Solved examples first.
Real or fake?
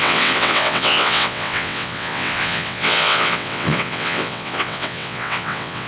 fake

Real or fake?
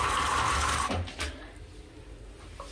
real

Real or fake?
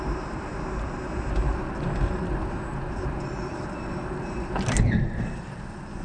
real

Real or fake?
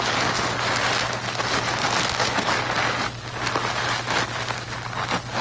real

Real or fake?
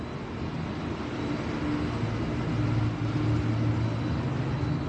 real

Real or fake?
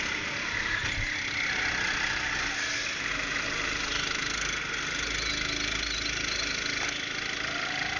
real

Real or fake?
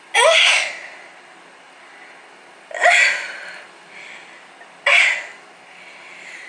real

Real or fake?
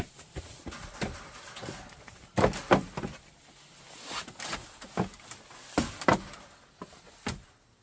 real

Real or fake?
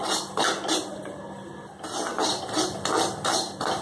real